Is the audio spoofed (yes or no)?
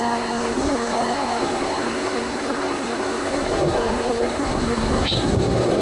yes